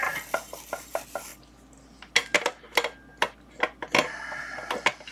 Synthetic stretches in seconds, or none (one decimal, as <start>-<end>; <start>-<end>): none